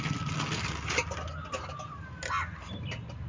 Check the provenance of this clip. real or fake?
real